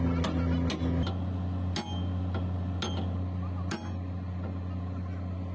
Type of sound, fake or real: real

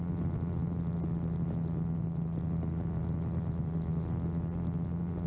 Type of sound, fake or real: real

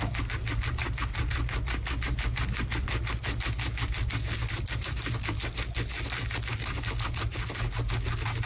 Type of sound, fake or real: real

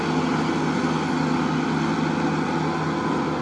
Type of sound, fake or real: real